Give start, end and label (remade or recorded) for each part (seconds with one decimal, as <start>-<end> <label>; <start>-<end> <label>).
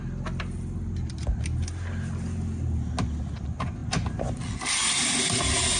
0.0-5.8 recorded